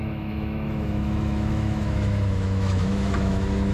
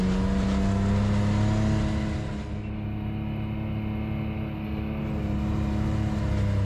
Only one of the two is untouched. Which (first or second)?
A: second